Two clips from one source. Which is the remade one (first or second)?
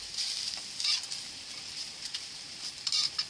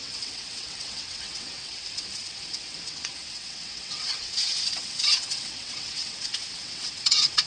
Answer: second